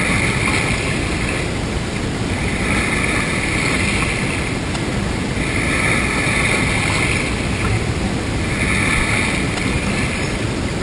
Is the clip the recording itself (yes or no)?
yes